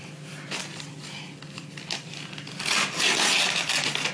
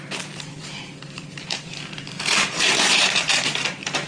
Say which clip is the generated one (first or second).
second